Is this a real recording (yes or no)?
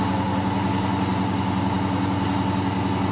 yes